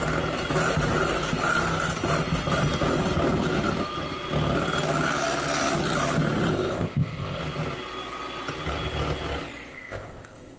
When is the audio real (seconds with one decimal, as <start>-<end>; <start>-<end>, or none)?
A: 0.0-6.5; 7.4-9.7